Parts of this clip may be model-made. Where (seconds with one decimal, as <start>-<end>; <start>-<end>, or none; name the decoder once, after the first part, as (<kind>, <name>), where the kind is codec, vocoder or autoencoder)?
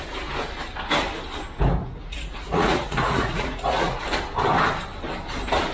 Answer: 1.8-4.0 (vocoder, Vocos)